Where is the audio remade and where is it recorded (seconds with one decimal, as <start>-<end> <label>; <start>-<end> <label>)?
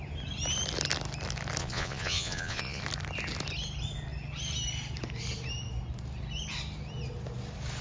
0.0-1.6 recorded; 1.6-2.8 remade; 2.8-7.8 recorded